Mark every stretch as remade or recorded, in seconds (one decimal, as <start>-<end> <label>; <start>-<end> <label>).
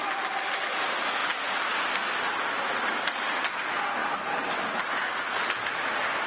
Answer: 0.0-6.3 recorded